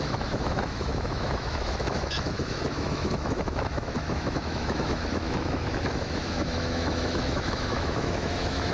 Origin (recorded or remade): remade